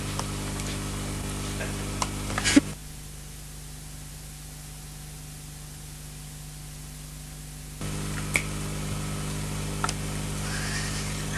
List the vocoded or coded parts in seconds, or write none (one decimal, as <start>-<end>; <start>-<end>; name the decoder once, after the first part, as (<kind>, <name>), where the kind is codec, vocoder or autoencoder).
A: none